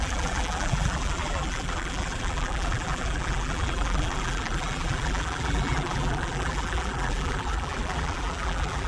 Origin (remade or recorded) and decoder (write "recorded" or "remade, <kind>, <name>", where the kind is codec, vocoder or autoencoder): remade, vocoder, BigVGAN v2